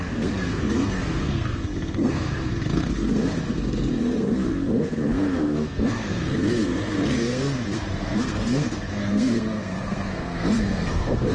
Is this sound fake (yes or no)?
yes